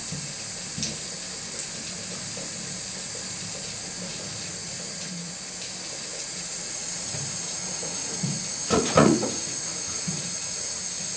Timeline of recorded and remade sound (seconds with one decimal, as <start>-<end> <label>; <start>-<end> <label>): 0.0-4.1 recorded; 4.1-5.3 remade; 5.3-6.1 recorded; 6.1-10.7 remade; 10.7-11.2 recorded